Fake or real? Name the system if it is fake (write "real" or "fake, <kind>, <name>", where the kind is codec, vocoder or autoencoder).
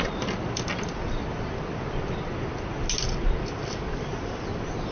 real